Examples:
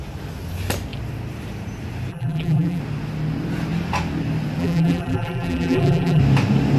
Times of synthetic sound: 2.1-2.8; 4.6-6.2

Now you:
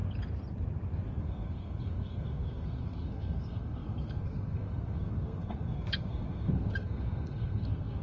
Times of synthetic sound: 1.2-8.0